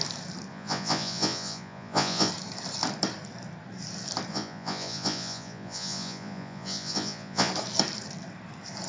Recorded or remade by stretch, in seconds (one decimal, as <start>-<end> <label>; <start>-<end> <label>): 0.0-0.5 recorded; 0.5-2.3 remade; 2.3-4.3 recorded; 4.3-7.5 remade; 7.5-8.9 recorded